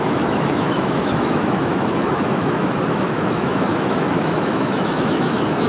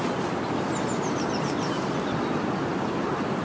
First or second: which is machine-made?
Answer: first